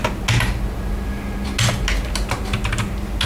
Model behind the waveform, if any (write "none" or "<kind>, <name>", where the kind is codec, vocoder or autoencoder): none